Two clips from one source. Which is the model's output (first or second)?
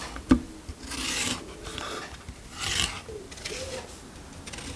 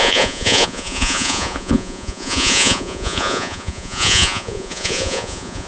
second